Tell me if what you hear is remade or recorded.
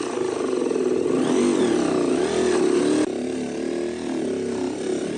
recorded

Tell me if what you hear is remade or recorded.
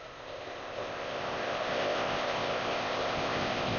remade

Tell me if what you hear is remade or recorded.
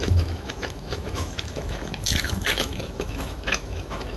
remade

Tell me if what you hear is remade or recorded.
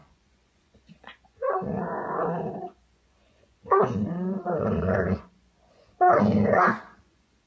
remade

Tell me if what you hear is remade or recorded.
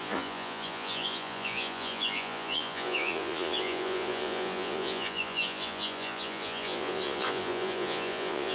remade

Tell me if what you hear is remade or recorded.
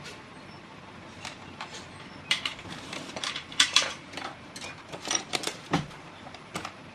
remade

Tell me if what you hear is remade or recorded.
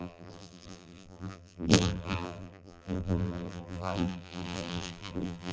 remade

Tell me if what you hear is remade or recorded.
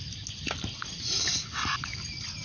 recorded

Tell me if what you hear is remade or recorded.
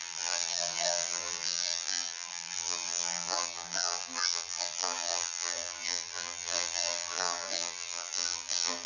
remade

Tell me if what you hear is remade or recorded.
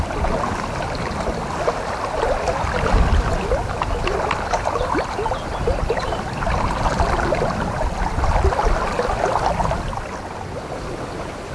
recorded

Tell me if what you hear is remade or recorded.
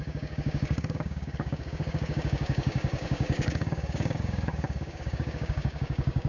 remade